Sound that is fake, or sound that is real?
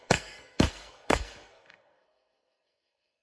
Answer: fake